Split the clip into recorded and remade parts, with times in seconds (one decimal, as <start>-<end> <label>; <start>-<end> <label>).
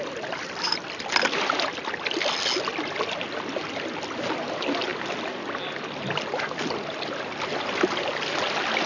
0.0-8.9 recorded